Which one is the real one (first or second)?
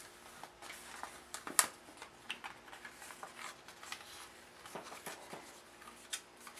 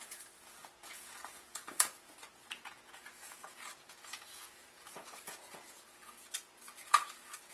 first